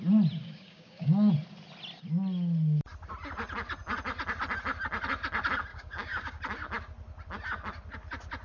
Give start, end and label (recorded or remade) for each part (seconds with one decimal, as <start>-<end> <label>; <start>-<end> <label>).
0.0-0.4 recorded; 0.4-1.3 remade; 1.3-5.7 recorded; 5.7-6.4 remade; 6.4-8.4 recorded